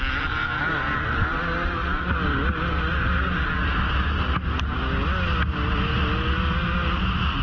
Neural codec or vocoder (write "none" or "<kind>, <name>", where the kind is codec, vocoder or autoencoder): none